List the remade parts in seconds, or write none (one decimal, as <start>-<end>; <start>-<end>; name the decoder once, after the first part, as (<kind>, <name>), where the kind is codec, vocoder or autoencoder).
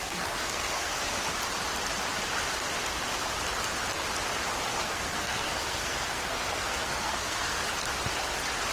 0.0-1.2 (codec, SNAC); 4.8-7.6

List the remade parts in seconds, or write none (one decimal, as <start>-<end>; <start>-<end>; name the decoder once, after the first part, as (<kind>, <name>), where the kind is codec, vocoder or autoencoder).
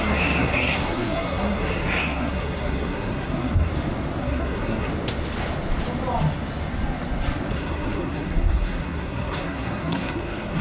0.0-3.7 (codec, SNAC); 4.2-4.9; 7.5-10.6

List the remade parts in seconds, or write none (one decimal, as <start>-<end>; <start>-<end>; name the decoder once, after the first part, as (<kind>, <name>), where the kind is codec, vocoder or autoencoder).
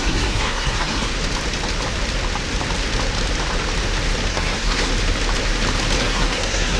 0.0-1.1 (codec, SNAC); 4.3-4.9; 6.0-6.8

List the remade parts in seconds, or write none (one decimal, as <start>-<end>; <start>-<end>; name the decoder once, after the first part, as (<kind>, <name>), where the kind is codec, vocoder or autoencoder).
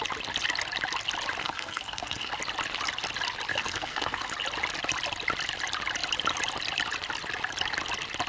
1.4-2.3 (codec, SNAC); 3.5-4.3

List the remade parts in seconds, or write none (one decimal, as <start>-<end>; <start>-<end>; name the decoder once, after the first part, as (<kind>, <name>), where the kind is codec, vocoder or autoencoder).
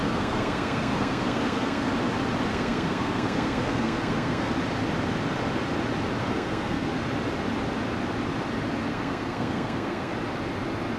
0.0-1.9 (codec, SNAC); 2.5-4.5; 6.2-6.9; 8.9-10.1